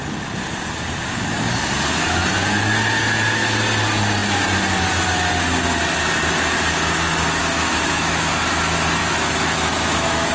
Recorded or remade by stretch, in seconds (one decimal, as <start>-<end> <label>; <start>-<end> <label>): 0.0-7.4 recorded; 7.4-8.3 remade; 8.3-9.0 recorded; 9.0-10.3 remade

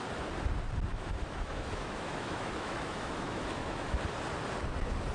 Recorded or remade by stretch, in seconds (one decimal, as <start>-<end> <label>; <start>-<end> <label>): 0.0-0.9 recorded; 0.9-4.0 remade; 4.0-5.1 recorded

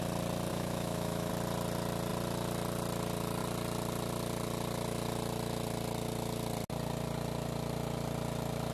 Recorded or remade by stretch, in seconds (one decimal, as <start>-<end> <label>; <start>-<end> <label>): 0.0-0.5 recorded; 0.5-1.3 remade; 1.3-8.7 recorded